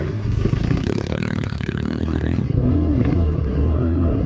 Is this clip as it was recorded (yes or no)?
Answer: no